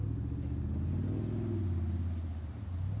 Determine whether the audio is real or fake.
real